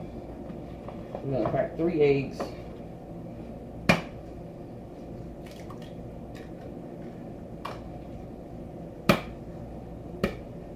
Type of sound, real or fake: real